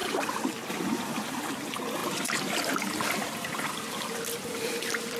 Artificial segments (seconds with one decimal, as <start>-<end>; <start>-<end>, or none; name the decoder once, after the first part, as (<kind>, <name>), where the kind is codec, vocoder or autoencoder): 0.0-1.4 (vocoder, BigVGAN v2)